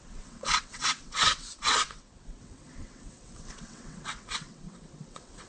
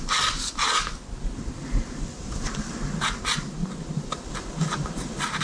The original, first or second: second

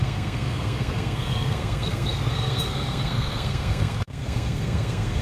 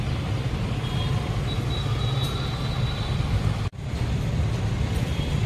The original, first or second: second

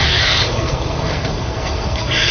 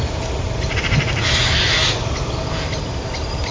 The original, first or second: second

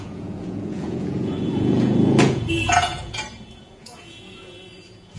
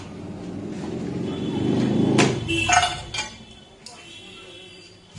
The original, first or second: second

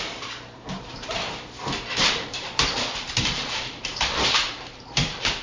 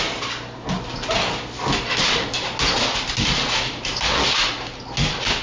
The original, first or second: second